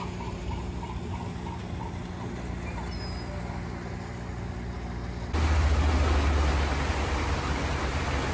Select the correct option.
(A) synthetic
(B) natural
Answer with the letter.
B